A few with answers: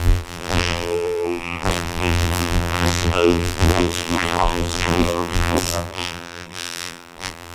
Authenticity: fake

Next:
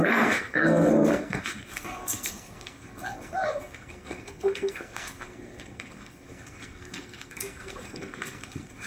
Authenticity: fake